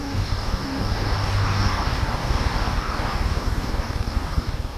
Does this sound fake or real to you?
fake